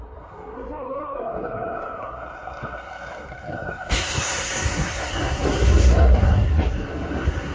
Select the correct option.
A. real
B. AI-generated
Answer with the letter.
B